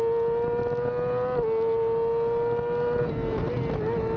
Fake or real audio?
real